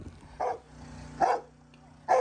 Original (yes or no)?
yes